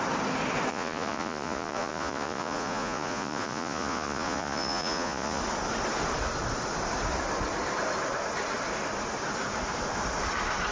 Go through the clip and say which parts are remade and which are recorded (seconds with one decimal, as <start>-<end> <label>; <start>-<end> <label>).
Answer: 0.0-0.7 recorded; 0.7-5.4 remade; 5.4-10.7 recorded